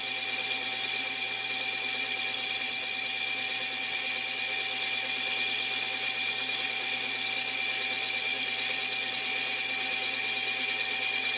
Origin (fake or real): real